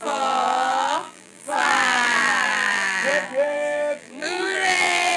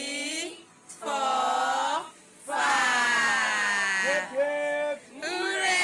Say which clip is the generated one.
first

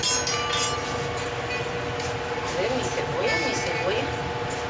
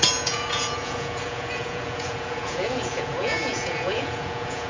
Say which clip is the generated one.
second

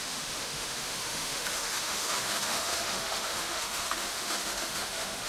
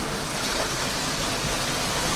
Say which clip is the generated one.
first